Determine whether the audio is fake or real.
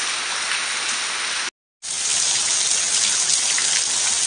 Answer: real